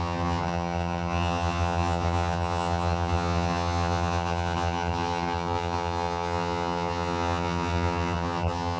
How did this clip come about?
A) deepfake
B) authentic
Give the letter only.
A